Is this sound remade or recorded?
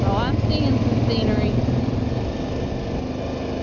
recorded